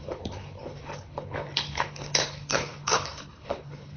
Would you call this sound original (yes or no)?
no